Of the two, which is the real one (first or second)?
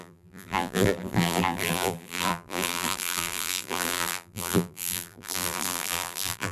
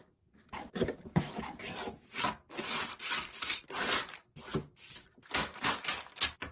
second